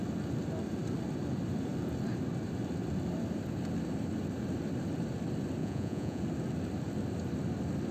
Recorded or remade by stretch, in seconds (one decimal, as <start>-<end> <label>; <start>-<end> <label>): 0.0-5.6 recorded; 5.6-6.2 remade; 6.2-7.9 recorded